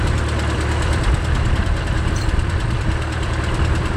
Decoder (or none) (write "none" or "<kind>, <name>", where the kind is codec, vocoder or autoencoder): vocoder, BigVGAN v2